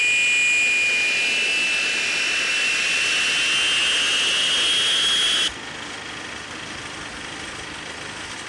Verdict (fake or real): real